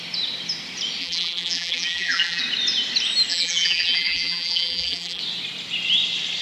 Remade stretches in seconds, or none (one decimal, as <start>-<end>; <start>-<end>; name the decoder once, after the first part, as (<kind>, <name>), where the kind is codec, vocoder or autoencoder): 1.0-2.4 (vocoder, BigVGAN v2); 3.3-5.2